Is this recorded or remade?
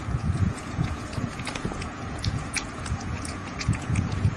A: remade